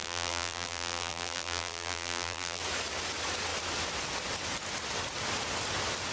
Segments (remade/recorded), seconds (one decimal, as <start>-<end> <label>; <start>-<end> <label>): 0.0-2.6 remade; 2.6-6.1 recorded